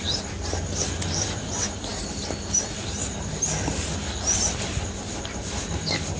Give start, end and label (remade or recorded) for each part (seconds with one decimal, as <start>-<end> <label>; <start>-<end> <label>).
0.0-6.2 recorded